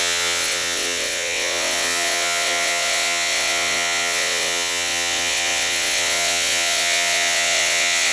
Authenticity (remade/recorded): remade